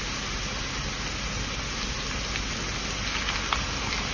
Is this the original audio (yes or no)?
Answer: yes